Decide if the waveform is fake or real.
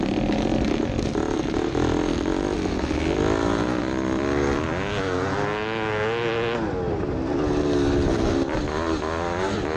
real